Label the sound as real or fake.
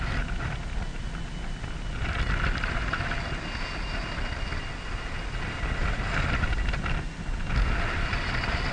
real